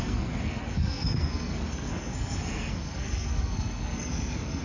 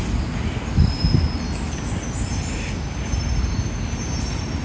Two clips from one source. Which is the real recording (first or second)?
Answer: second